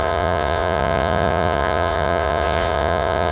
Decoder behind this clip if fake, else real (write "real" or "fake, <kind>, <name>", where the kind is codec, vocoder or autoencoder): fake, vocoder, Vocos